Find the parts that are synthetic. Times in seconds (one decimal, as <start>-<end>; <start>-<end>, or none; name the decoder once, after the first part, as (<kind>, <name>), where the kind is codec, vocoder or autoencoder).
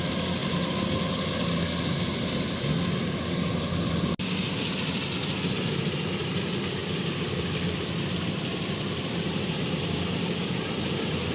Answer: 6.8-9.5 (vocoder, BigVGAN v2)